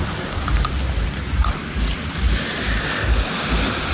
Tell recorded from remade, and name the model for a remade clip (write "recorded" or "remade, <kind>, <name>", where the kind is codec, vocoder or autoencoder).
recorded